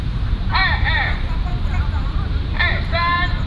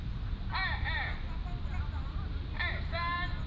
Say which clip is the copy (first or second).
first